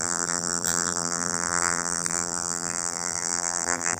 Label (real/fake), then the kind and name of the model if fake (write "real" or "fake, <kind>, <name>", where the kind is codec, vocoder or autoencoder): fake, vocoder, BigVGAN v2